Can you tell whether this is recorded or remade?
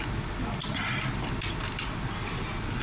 recorded